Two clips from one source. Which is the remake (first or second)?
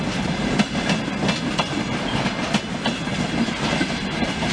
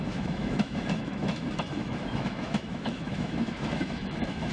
second